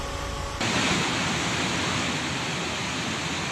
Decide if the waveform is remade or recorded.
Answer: recorded